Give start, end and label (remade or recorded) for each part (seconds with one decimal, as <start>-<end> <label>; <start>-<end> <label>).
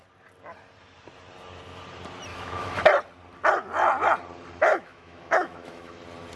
0.0-2.3 recorded; 2.3-2.8 remade; 2.8-4.7 recorded; 4.7-6.0 remade; 6.0-6.4 recorded